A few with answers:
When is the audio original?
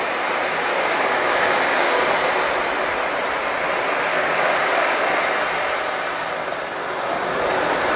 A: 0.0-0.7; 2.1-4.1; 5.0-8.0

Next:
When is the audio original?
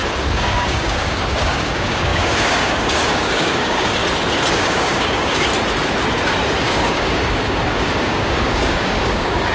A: 4.0-4.5; 5.5-6.6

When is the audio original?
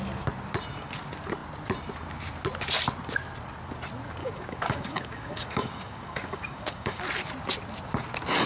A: 0.0-4.2; 7.0-8.5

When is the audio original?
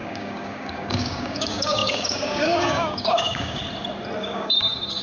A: 3.6-4.2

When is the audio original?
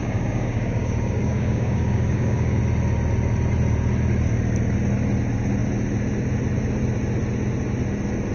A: 2.6-8.3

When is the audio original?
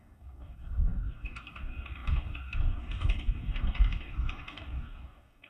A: none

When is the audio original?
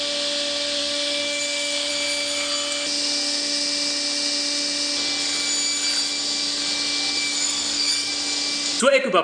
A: 0.0-0.8; 1.9-7.3; 8.1-9.2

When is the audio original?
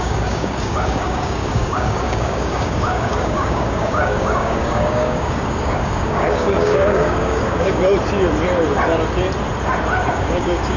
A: 7.8-10.1